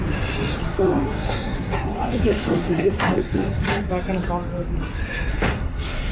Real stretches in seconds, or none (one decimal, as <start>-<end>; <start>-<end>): 0.0-0.6; 3.9-5.3